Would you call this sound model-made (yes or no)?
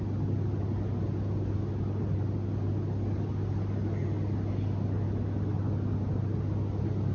no